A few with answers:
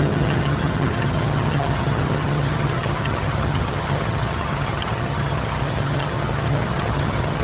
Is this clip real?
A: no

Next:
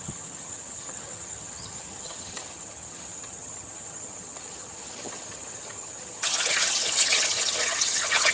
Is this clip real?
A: no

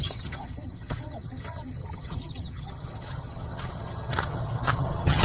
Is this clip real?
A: no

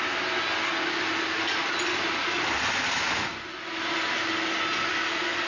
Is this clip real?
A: yes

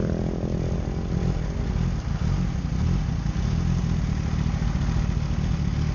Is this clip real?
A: yes